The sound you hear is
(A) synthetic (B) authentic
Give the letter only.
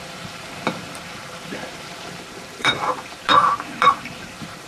A